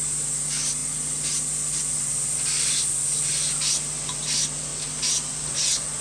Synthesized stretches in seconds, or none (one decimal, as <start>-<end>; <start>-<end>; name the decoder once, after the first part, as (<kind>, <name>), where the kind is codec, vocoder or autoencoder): none